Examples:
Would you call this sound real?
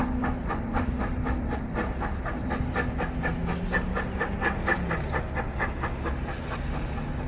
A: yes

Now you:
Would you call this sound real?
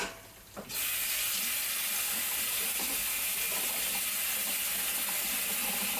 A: yes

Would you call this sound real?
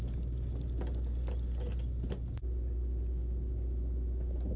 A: yes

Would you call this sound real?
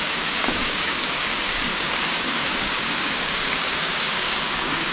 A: no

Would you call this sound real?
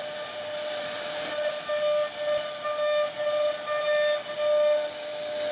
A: yes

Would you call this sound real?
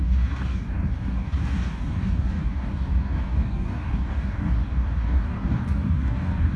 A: no